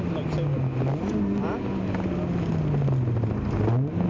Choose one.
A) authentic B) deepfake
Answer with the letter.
A